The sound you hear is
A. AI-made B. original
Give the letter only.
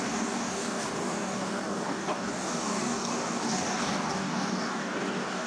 A